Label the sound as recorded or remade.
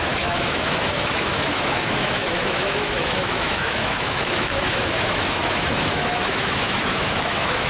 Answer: remade